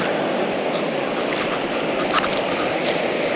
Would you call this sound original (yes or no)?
yes